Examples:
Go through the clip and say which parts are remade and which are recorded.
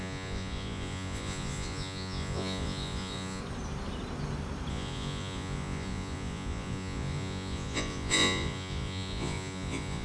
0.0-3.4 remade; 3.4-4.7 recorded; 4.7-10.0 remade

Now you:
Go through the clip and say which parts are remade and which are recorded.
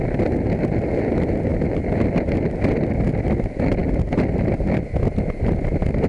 0.0-6.1 recorded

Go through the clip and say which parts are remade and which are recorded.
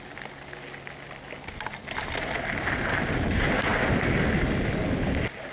0.0-5.5 recorded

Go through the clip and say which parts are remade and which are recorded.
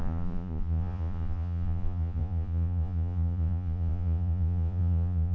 0.0-5.3 remade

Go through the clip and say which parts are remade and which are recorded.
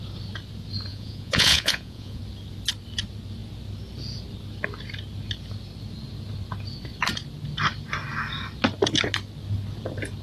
0.0-0.9 recorded; 0.9-2.2 remade; 2.2-10.2 recorded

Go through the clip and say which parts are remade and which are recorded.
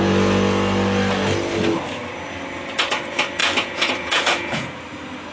0.0-3.4 recorded; 3.4-4.8 remade; 4.8-5.3 recorded